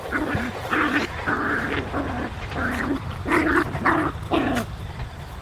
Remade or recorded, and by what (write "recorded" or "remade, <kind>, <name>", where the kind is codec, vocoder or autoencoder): remade, vocoder, BigVGAN v2